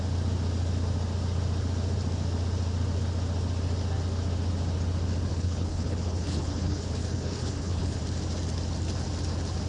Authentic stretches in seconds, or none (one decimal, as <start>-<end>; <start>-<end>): 0.0-5.3; 8.0-9.7